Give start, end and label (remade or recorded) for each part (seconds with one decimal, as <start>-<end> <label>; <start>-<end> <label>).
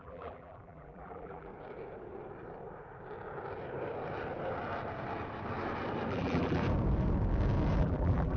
0.0-1.5 remade; 1.5-6.1 recorded; 6.1-6.6 remade; 6.6-7.8 recorded; 7.8-8.4 remade